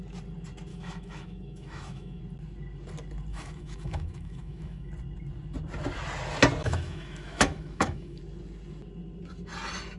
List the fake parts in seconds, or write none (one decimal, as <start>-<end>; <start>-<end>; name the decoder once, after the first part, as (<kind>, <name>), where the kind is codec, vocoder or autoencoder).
0.7-2.2 (autoencoder, DAC-VAE); 3.3-4.9; 6.6-8.2